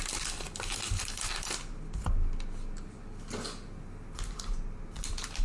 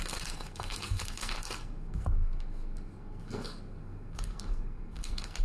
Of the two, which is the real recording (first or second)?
first